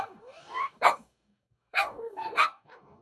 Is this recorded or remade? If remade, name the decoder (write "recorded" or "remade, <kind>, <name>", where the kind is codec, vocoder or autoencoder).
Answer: remade, codec, DAC